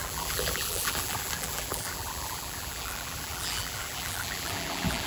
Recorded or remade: remade